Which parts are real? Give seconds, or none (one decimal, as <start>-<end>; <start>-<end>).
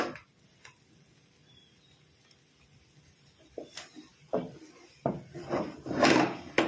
0.0-6.7